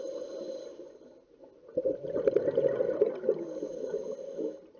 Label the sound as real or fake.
real